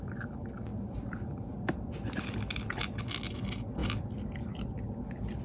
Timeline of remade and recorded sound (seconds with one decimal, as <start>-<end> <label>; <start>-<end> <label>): 0.0-0.7 recorded; 0.7-1.5 remade; 1.5-3.8 recorded; 3.8-4.4 remade; 4.4-5.4 recorded